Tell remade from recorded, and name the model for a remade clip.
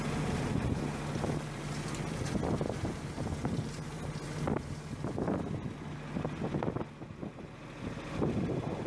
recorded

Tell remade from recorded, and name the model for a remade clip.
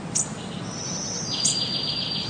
recorded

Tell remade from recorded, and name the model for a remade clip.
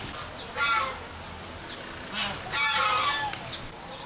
recorded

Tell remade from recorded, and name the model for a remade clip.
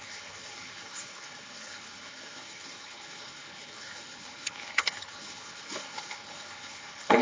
remade, codec, HILCodec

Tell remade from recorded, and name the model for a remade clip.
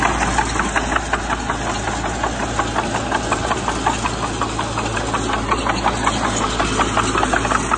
recorded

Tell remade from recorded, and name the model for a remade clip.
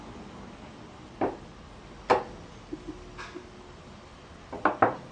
recorded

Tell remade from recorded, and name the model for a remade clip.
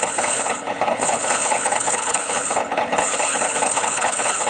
remade, codec, HILCodec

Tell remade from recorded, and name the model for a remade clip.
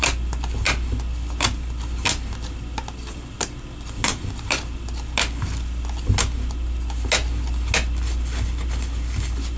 recorded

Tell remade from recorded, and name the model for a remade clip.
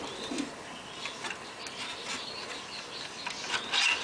recorded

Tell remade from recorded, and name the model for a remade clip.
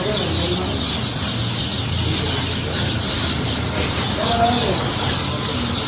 recorded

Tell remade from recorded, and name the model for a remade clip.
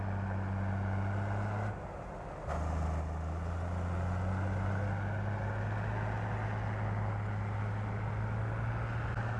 recorded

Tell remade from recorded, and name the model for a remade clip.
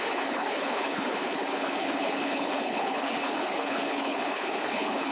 remade, codec, HILCodec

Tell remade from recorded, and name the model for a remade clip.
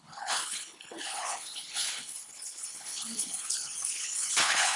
remade, codec, HILCodec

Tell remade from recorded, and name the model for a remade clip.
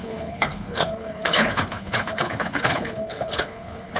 remade, codec, HILCodec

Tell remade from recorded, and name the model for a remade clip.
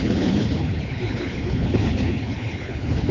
remade, codec, HILCodec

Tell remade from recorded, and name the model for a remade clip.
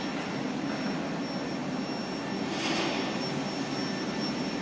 recorded